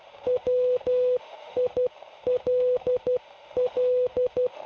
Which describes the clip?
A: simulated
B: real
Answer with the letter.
A